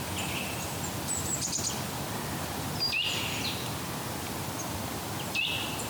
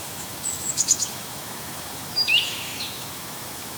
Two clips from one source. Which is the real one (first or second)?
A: first